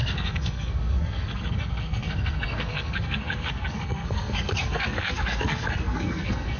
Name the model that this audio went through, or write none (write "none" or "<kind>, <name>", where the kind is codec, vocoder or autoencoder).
codec, SNAC